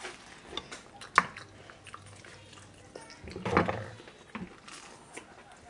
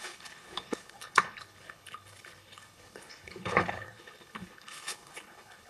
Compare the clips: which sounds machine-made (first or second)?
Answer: second